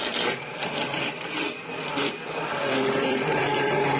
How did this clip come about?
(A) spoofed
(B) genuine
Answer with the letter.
A